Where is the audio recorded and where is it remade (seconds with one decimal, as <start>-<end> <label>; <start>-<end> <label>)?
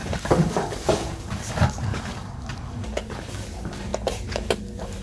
0.0-5.0 remade